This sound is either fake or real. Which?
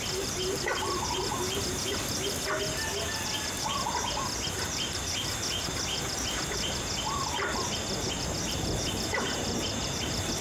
real